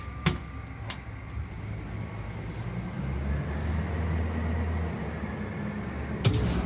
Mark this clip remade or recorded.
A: recorded